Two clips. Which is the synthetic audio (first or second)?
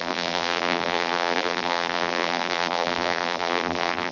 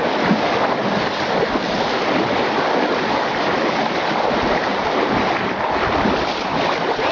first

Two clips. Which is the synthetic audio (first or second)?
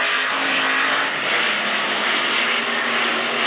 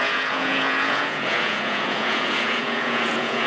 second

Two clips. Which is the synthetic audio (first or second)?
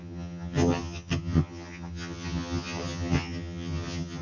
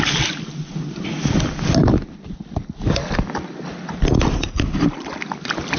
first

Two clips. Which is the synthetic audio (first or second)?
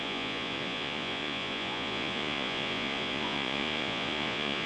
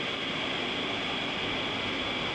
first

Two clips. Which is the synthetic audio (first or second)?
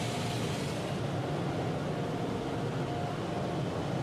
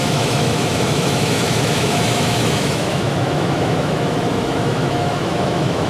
second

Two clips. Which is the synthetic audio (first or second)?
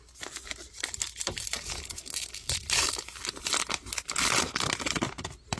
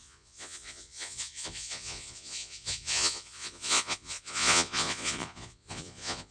second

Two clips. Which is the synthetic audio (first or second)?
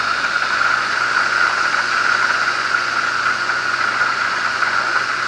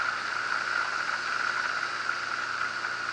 first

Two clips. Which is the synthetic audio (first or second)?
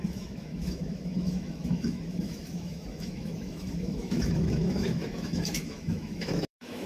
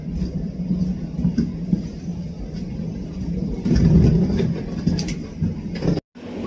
first